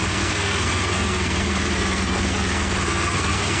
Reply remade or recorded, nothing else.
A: remade